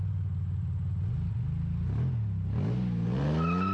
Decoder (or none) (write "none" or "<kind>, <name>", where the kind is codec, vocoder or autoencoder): none